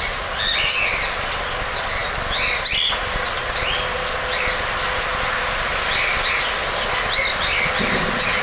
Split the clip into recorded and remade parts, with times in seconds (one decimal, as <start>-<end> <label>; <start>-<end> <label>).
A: 0.0-8.4 recorded